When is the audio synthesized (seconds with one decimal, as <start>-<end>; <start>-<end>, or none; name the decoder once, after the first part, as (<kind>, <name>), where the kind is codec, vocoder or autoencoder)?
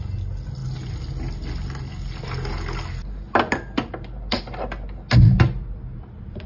none